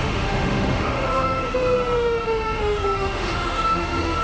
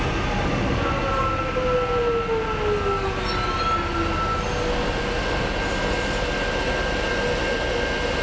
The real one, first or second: second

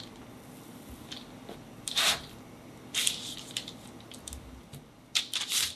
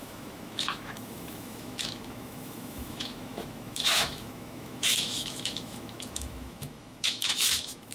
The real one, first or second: first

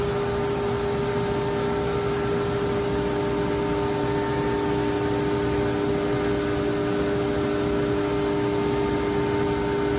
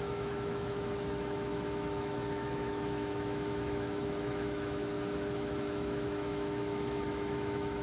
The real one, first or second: first